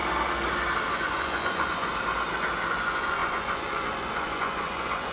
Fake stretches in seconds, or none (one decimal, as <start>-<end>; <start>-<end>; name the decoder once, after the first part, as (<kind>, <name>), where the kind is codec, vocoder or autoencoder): 0.9-1.9 (vocoder, Vocos); 2.7-5.1